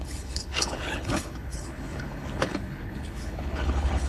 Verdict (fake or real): fake